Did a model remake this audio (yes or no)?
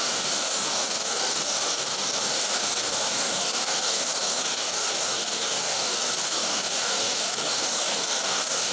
yes